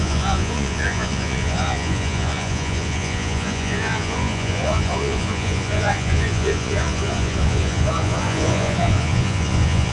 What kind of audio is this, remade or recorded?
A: remade